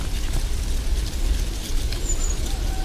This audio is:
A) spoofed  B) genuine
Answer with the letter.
B